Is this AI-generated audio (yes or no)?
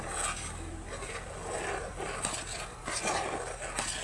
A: no